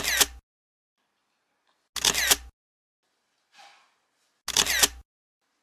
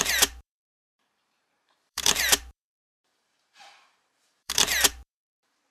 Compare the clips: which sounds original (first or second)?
first